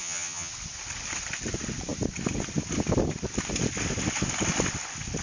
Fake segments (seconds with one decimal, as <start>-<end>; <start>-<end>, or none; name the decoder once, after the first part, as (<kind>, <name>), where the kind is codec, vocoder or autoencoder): 0.0-0.5 (vocoder, HiFi-GAN)